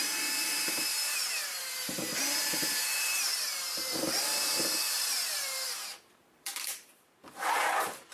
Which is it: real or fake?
fake